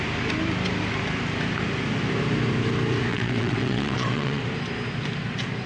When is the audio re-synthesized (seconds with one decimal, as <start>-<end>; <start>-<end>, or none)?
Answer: 3.1-4.4